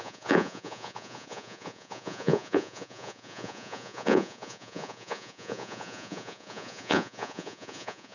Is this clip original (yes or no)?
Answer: no